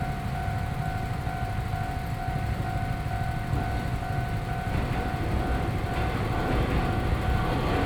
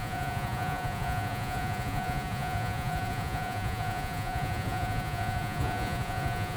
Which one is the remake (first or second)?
second